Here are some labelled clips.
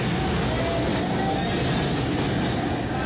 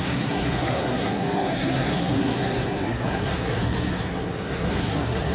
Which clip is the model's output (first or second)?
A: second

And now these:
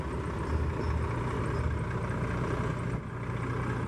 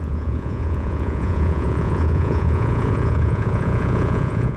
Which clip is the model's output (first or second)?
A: second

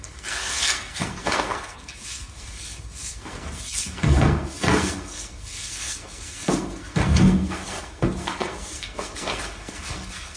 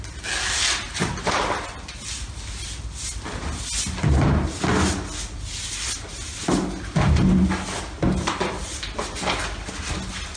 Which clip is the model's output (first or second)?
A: first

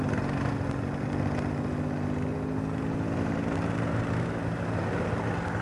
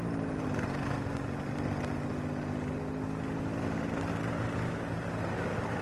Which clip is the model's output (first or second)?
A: second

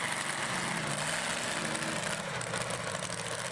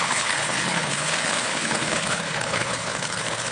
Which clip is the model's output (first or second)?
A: second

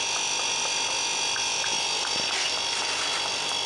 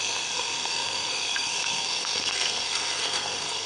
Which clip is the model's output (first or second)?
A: second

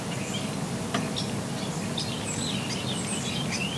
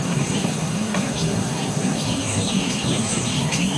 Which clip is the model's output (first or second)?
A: second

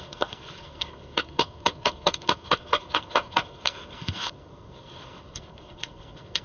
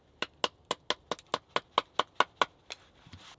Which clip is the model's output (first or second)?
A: first